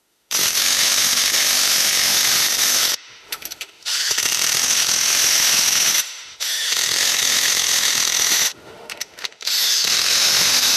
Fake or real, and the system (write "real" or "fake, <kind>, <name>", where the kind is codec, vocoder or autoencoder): fake, autoencoder, DAC-VAE